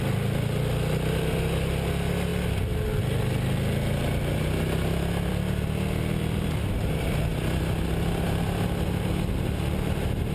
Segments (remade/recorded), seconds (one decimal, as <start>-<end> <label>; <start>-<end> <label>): 0.0-10.3 recorded